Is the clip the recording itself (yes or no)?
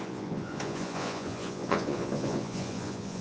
no